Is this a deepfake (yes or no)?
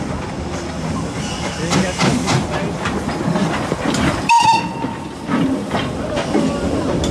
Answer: no